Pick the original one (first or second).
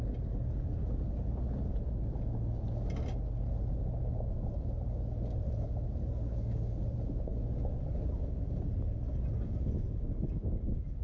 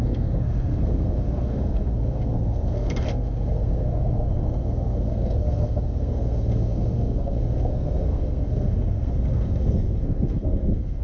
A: first